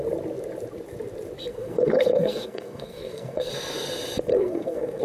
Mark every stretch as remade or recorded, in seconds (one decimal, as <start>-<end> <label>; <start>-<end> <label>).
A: 0.0-1.5 recorded; 1.5-3.5 remade; 3.5-4.3 recorded; 4.3-5.0 remade